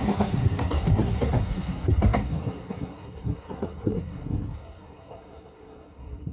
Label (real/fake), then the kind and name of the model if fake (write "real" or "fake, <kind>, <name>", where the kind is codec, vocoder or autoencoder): fake, codec, SNAC